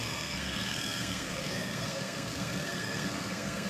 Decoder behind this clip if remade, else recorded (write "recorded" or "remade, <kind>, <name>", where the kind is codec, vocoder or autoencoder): remade, codec, SNAC